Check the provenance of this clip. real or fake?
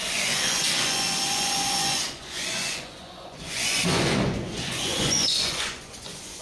fake